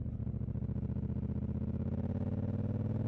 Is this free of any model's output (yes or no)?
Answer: yes